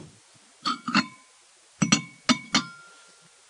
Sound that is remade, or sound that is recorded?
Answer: recorded